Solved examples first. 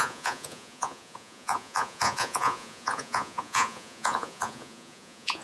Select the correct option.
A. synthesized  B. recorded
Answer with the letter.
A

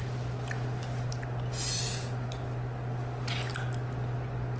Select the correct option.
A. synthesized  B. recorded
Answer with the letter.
B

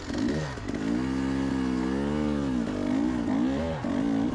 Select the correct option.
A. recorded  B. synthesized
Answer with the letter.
A